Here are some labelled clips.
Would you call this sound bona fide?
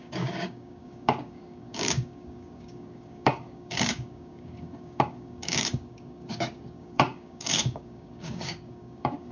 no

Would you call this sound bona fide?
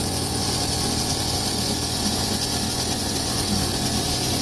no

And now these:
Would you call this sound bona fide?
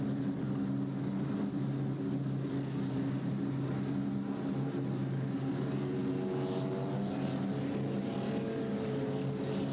yes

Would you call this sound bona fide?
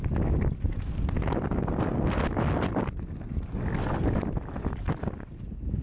yes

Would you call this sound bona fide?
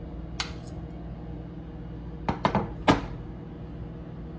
yes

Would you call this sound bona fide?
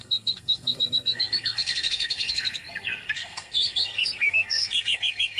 no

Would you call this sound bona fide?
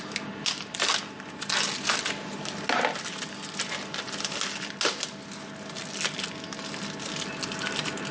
yes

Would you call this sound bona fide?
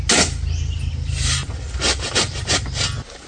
yes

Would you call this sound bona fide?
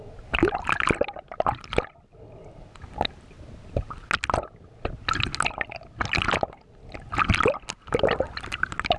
yes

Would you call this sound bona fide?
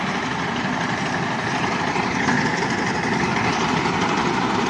no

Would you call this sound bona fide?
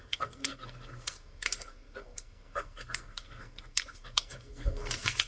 no